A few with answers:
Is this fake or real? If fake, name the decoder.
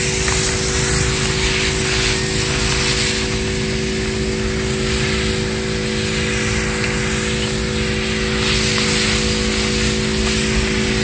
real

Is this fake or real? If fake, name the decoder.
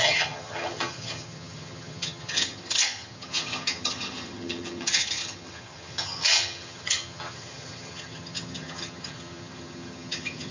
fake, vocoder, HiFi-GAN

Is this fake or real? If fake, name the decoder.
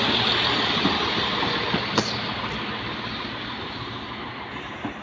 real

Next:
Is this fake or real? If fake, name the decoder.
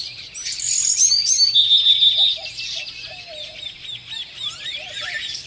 real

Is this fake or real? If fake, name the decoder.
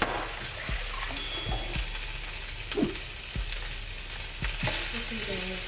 real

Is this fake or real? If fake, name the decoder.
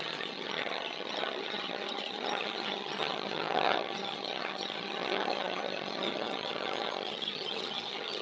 fake, vocoder, HiFi-GAN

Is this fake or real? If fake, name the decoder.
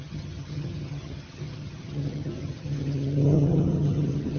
fake, vocoder, HiFi-GAN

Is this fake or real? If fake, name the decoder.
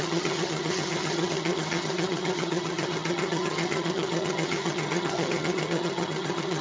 fake, vocoder, HiFi-GAN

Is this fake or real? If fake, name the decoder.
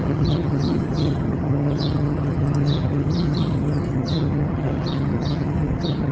fake, vocoder, HiFi-GAN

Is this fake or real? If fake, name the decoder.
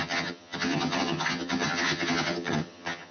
fake, vocoder, HiFi-GAN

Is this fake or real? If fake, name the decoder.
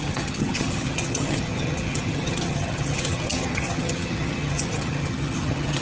fake, vocoder, HiFi-GAN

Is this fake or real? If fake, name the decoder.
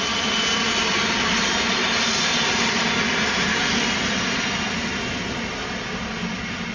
real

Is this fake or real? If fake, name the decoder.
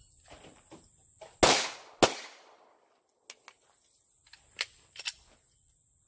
real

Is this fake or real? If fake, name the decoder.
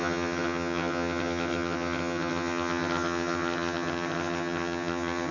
fake, vocoder, HiFi-GAN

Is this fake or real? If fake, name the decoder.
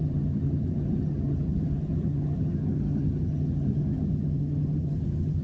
fake, vocoder, HiFi-GAN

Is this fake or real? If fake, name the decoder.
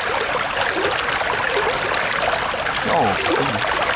real